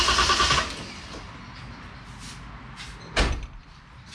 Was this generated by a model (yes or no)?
no